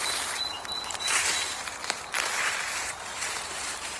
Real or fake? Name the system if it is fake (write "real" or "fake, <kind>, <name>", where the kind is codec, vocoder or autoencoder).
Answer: fake, vocoder, BigVGAN v2